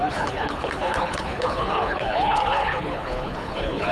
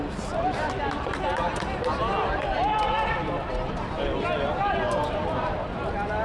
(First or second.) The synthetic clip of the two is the first